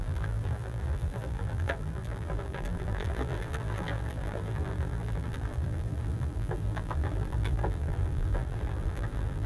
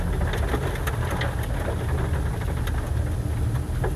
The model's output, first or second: first